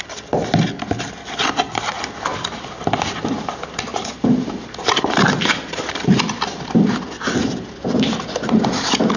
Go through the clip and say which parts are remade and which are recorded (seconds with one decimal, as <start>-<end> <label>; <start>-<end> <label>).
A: 0.0-2.3 recorded; 2.3-3.5 remade; 3.5-9.2 recorded

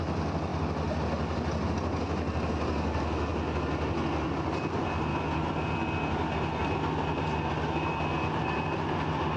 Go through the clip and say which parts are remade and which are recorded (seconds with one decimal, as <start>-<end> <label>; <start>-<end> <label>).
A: 0.0-0.5 recorded; 0.5-1.7 remade; 1.7-3.3 recorded; 3.3-4.5 remade; 4.5-9.4 recorded

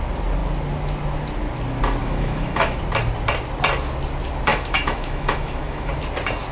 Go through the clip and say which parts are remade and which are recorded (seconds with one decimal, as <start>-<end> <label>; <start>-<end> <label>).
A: 0.0-2.0 recorded; 2.0-2.8 remade; 2.8-4.5 recorded; 4.5-5.9 remade; 5.9-6.5 recorded

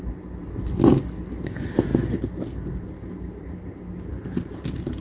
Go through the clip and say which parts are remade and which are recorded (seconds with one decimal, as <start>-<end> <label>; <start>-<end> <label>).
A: 0.0-4.1 recorded; 4.1-5.0 remade

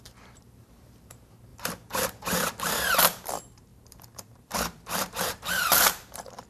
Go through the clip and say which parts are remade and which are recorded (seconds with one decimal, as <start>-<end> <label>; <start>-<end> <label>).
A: 0.0-6.5 remade

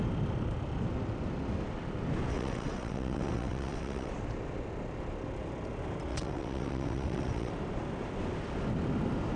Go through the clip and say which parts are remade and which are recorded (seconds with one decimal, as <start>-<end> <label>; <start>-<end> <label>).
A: 0.0-2.3 recorded; 2.3-4.1 remade; 4.1-6.1 recorded; 6.1-7.5 remade; 7.5-9.4 recorded